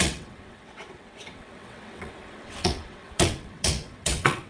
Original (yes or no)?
no